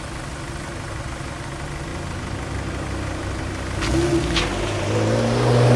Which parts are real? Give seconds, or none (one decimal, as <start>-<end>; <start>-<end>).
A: 0.0-5.8